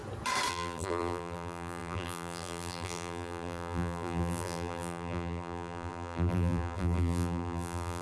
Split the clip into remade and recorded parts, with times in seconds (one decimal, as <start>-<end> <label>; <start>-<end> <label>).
0.0-0.5 recorded; 0.5-8.0 remade